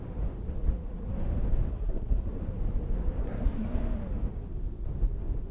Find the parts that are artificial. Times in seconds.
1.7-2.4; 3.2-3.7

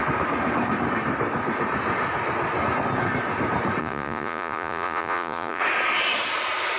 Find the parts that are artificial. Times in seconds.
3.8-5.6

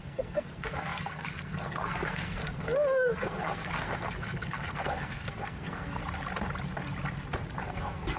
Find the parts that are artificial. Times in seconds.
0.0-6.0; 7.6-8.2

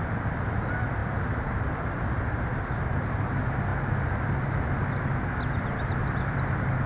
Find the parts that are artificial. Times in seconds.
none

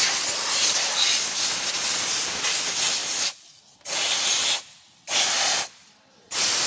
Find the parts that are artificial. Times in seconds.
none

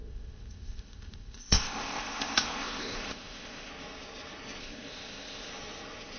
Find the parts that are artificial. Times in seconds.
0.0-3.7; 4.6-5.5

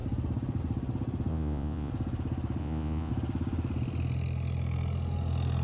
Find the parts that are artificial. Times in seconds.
1.3-1.9; 2.6-3.1

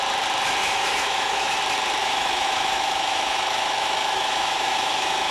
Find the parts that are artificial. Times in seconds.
0.6-1.6; 2.0-5.3